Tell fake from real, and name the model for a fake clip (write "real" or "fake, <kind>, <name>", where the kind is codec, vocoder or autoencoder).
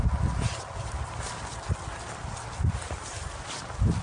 real